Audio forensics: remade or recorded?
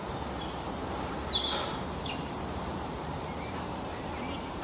remade